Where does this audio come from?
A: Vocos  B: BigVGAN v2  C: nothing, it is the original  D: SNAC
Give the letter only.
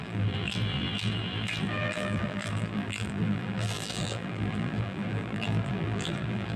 B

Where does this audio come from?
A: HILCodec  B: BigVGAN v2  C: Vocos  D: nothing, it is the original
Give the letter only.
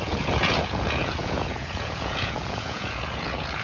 C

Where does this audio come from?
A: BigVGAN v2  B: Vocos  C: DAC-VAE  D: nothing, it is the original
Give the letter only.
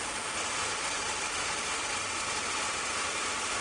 A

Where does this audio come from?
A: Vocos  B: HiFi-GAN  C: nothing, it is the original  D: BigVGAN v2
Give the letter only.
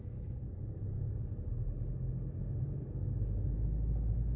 C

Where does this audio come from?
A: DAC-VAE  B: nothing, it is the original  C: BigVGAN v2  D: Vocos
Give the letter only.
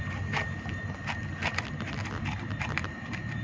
B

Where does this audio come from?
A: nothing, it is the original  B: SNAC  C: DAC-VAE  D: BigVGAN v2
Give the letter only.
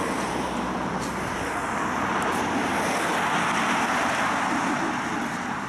A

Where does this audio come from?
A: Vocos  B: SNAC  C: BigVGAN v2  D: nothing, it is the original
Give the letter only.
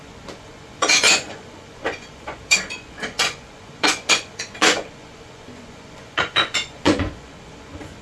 A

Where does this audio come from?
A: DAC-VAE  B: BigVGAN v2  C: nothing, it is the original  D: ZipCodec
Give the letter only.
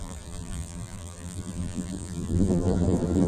B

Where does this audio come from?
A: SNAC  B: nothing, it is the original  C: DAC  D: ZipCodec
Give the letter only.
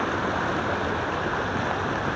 B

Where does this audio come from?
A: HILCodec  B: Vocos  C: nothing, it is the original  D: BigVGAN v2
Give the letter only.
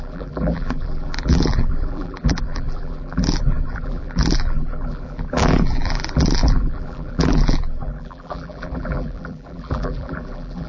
D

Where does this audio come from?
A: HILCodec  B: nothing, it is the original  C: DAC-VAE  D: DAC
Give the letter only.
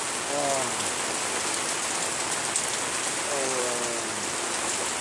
B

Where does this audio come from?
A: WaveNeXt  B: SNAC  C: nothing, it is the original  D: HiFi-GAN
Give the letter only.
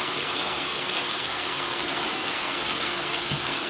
B